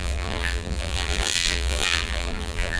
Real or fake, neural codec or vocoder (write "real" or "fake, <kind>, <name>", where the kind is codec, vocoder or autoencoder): fake, vocoder, BigVGAN v2